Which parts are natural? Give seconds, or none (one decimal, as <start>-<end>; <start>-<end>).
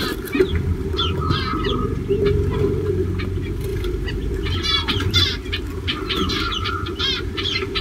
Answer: 0.0-3.7